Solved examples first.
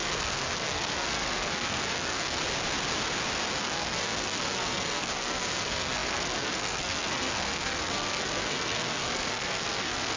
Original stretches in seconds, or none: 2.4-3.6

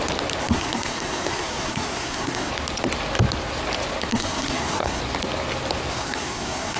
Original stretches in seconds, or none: 0.0-0.4; 2.5-4.1; 5.0-5.9

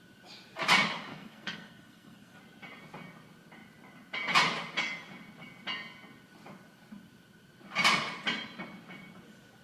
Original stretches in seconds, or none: 0.0-1.1; 2.4-9.6

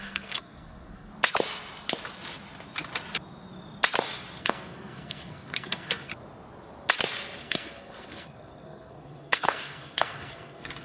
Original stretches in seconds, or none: 1.1-4.4; 6.1-7.4

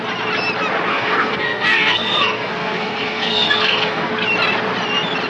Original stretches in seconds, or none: 0.0-0.9; 4.1-5.3

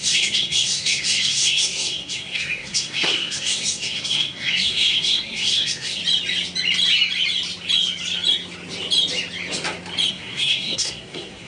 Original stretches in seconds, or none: 6.0-10.1

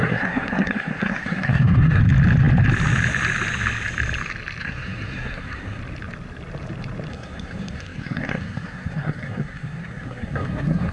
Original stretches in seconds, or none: 2.0-4.6; 5.8-7.1